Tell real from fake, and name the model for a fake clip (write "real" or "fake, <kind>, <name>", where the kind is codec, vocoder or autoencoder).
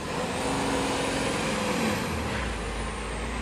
real